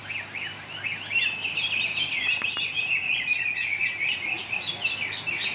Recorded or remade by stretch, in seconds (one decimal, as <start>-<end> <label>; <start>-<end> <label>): 0.0-3.0 recorded; 3.0-4.7 remade; 4.7-5.5 recorded